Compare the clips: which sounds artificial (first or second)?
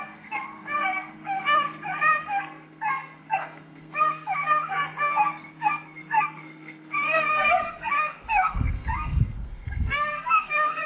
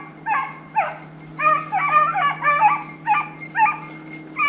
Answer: first